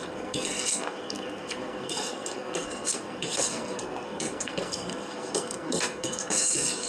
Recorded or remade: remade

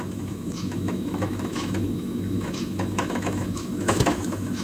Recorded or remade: remade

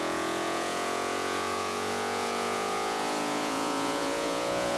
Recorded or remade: remade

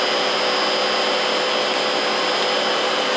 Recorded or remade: recorded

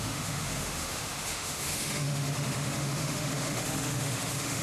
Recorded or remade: remade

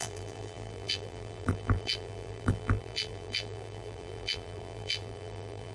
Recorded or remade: remade